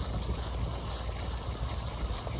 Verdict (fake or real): real